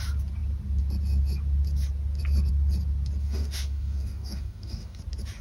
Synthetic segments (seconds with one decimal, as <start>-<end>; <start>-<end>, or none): 3.2-5.0